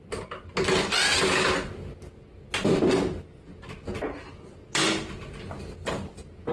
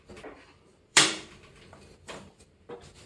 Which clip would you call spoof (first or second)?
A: second